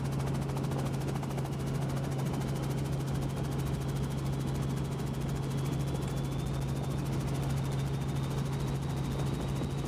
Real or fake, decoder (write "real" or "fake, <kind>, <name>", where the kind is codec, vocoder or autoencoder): real